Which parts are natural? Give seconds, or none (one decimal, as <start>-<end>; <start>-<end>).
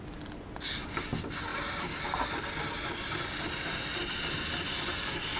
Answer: 0.0-5.4